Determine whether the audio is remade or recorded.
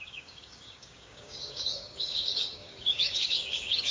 remade